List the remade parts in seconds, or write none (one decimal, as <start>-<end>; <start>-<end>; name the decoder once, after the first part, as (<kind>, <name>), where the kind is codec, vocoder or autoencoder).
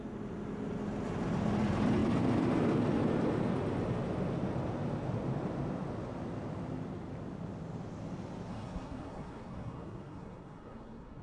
8.5-11.2 (codec, SNAC)